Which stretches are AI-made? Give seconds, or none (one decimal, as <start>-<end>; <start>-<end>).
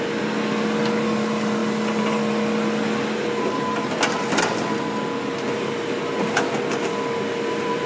none